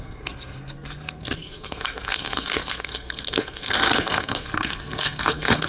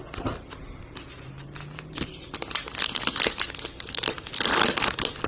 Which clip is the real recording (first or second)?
second